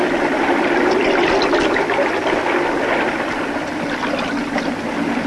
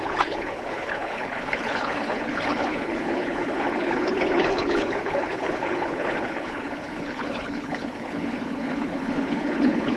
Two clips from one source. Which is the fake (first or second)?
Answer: second